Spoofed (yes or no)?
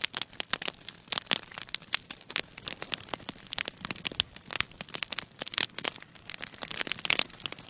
no